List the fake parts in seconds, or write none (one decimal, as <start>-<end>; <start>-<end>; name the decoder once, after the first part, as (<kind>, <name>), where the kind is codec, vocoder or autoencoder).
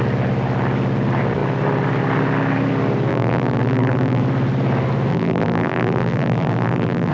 3.1-4.2 (vocoder, BigVGAN v2); 5.1-7.1